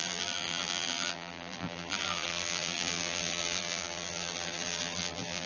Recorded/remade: remade